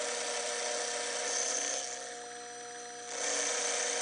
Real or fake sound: real